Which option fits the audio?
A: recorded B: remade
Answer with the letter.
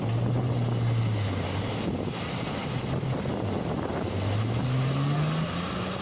A